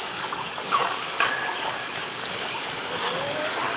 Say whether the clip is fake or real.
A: fake